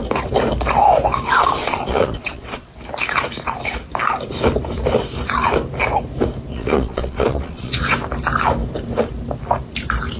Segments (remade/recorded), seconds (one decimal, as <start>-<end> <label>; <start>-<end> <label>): 0.0-1.6 recorded; 1.6-2.7 remade; 2.7-6.5 recorded; 6.5-7.8 remade; 7.8-10.2 recorded